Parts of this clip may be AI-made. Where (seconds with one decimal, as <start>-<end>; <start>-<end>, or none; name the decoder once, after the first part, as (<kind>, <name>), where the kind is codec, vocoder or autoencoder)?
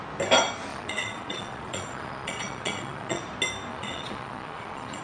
0.7-3.2 (vocoder, Vocos); 3.7-5.0